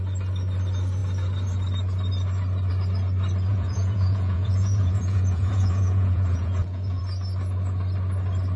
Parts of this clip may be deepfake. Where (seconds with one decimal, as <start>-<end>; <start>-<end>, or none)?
3.5-7.0